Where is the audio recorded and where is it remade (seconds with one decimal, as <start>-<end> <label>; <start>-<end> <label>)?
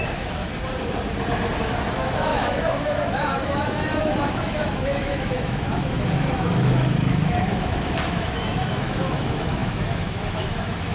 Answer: 0.0-0.5 remade; 0.5-1.6 recorded; 1.6-10.9 remade